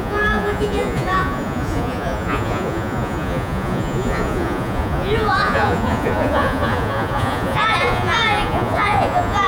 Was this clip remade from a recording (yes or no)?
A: yes